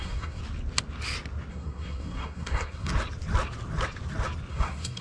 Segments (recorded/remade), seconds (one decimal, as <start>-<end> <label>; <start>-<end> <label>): 0.0-0.4 remade; 0.4-1.5 recorded; 1.5-2.9 remade; 2.9-4.5 recorded; 4.5-5.0 remade